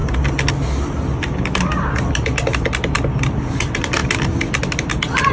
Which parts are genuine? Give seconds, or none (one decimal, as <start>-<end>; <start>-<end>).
0.0-5.3